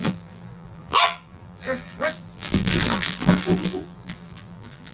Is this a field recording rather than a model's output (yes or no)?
no